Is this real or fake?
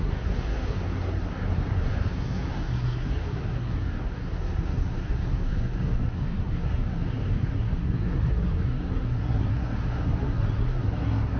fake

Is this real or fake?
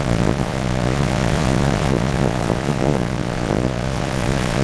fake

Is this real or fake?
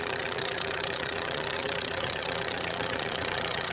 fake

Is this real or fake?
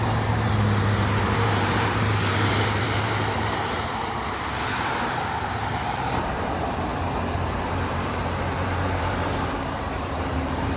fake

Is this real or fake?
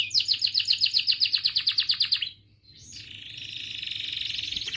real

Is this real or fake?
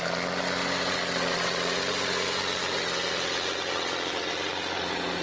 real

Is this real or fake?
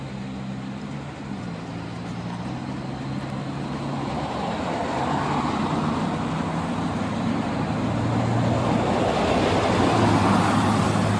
real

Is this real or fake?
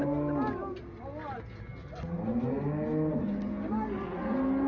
real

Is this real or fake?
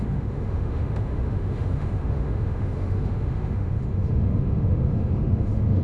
fake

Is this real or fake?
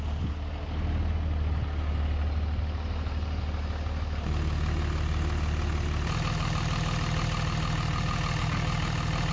real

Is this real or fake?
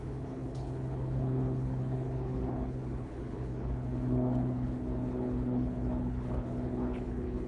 fake